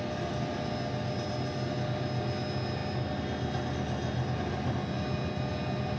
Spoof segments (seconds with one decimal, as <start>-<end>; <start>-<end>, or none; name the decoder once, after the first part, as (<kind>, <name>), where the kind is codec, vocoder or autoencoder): none